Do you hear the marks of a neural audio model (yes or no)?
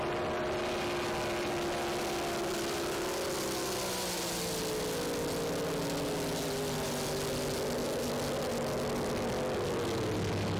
no